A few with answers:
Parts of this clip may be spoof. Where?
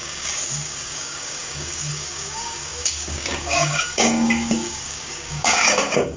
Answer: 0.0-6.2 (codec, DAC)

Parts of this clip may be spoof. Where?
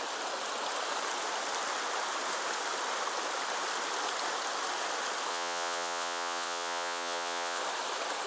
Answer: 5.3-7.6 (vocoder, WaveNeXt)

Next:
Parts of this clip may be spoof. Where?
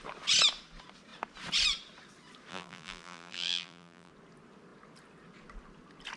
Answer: 2.5-4.1 (vocoder, BigVGAN v2)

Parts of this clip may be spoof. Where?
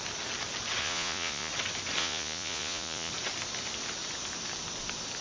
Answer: 0.8-1.5 (vocoder, Vocos); 2.0-3.1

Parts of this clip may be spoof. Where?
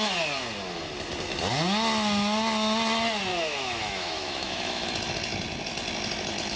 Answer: 3.3-4.9 (autoencoder, DAC-VAE)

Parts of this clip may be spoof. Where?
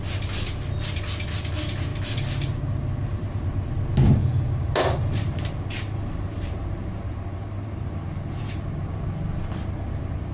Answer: 1.9-3.7 (vocoder, BigVGAN v2); 4.2-9.4